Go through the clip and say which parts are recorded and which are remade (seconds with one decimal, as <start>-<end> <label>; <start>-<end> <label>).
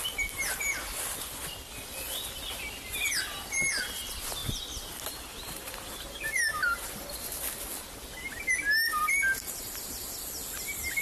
0.0-11.0 recorded